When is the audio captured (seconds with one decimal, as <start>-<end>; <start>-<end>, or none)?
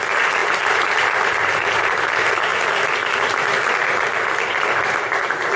2.5-3.8